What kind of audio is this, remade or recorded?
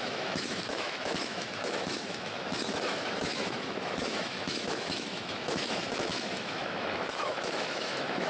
remade